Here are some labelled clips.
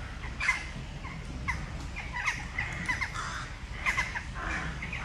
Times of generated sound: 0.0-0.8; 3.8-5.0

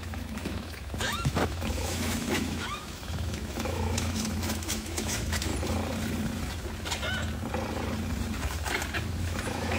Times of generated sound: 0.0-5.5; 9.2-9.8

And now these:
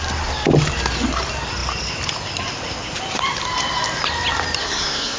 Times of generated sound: 4.6-5.2